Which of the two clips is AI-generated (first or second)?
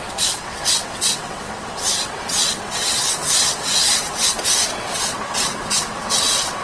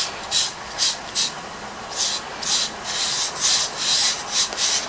first